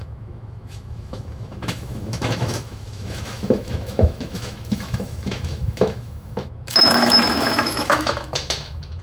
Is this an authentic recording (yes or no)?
no